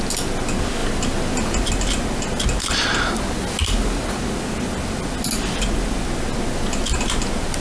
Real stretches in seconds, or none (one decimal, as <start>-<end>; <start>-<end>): 0.0-7.6